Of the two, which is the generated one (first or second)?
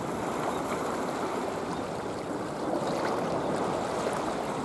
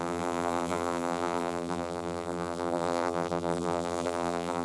second